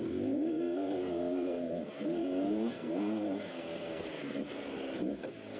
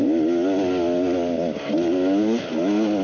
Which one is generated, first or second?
first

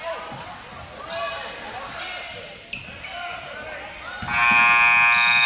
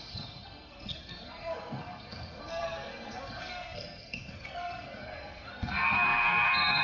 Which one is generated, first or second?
second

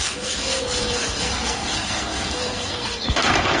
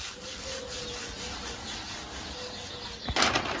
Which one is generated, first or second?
first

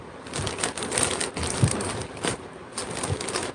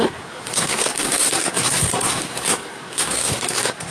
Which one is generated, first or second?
second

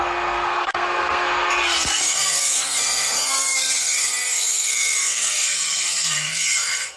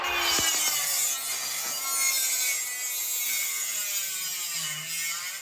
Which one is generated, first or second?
first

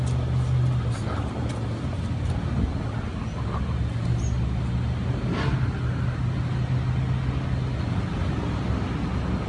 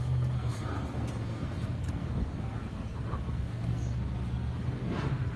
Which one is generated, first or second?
second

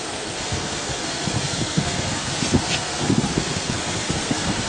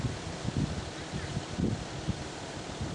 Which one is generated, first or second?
first